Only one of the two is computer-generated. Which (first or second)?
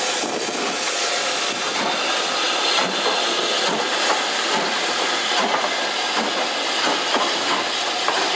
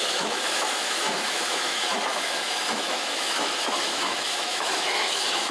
second